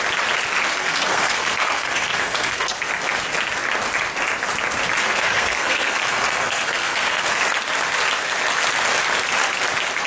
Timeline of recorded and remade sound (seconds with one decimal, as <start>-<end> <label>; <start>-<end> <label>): 0.0-0.7 recorded; 0.7-2.9 remade; 2.9-5.0 recorded; 5.0-7.3 remade; 7.3-10.1 recorded